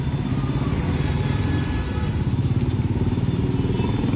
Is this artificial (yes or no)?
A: no